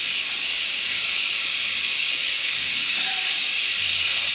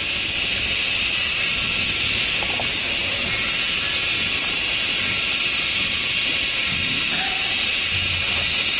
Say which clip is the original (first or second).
second